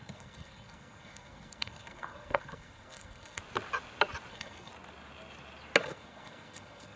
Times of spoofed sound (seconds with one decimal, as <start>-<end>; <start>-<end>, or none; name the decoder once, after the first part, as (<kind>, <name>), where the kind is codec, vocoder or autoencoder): 0.0-3.4 (codec, SNAC); 4.3-4.7; 5.8-7.0